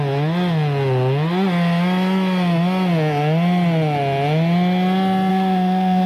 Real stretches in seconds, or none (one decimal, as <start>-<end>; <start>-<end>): 0.0-5.3